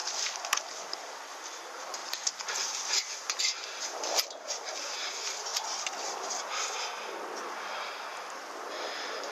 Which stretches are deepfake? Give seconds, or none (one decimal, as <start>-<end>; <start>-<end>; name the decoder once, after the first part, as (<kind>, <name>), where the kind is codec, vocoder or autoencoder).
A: none